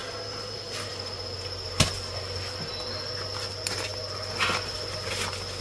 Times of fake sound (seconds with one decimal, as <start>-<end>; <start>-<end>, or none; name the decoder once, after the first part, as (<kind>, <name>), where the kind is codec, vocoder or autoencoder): none